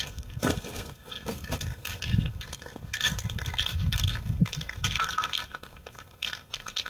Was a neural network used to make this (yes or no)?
yes